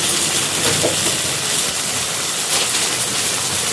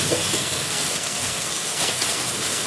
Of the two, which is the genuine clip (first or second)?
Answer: first